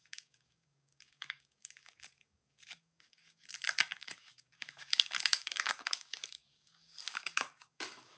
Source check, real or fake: fake